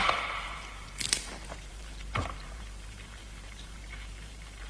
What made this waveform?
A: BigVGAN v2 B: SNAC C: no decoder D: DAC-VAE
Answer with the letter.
A